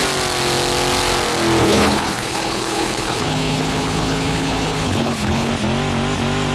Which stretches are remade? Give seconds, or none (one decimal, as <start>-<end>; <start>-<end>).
1.6-5.5